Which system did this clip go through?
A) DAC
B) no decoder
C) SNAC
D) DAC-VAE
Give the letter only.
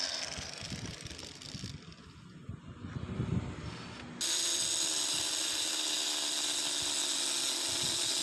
B